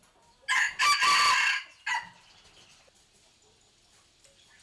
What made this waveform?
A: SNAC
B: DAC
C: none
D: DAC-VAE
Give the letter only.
C